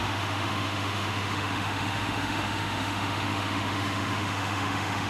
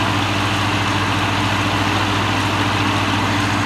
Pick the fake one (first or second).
first